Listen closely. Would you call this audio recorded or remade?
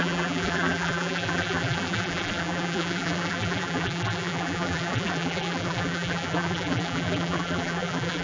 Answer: remade